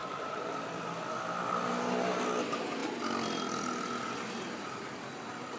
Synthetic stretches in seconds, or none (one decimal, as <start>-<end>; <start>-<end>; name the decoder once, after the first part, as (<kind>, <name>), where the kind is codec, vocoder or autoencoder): none